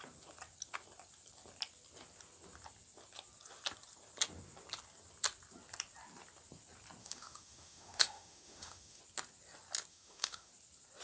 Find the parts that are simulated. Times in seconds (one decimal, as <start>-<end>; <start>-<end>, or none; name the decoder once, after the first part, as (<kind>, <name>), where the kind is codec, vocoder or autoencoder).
7.0-9.0 (autoencoder, DAC-VAE); 9.9-10.5